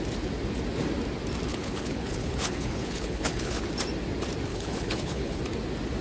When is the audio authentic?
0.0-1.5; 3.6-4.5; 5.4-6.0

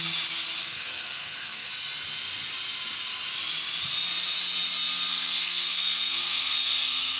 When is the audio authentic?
0.0-0.6; 1.7-5.1

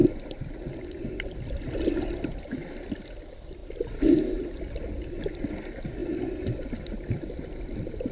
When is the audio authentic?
0.0-8.1

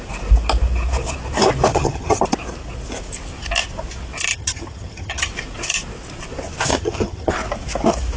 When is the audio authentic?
0.0-1.7; 2.2-4.3; 5.3-6.7; 7.3-8.2

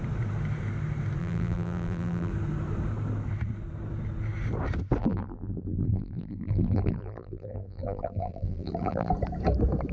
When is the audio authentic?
0.0-1.2; 2.3-5.0; 9.1-9.9

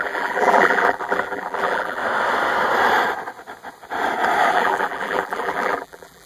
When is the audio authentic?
2.0-4.5

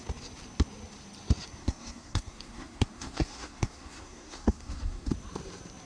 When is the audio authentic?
0.0-1.6; 5.1-5.9